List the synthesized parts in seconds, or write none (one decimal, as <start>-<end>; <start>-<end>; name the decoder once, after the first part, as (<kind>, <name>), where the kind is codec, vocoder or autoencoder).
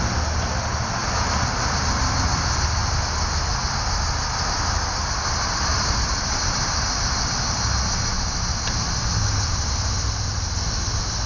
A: 5.7-7.8 (vocoder, BigVGAN v2)